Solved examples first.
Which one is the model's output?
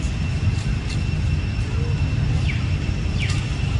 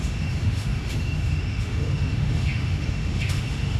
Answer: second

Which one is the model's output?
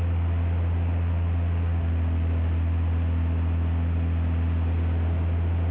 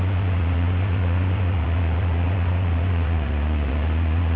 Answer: second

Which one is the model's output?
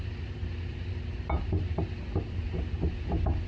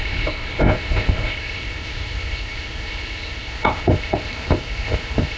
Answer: second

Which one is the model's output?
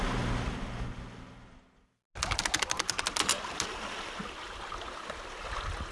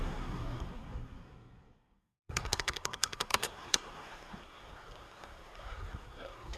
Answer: second